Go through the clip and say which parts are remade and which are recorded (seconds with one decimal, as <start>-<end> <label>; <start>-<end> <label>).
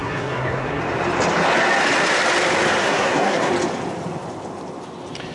0.0-0.8 remade; 0.8-2.8 recorded; 2.8-3.5 remade; 3.5-5.3 recorded